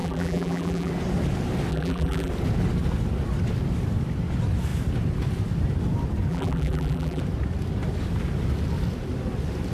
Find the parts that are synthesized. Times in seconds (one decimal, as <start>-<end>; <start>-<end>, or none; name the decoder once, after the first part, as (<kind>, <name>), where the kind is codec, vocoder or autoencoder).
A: 0.0-0.9 (vocoder, BigVGAN v2); 1.7-2.3; 6.3-7.2